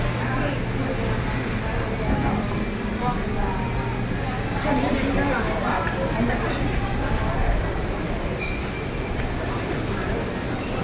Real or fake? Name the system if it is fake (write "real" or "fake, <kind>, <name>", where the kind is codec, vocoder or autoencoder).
real